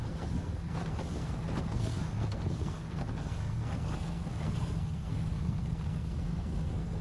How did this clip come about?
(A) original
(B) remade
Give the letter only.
B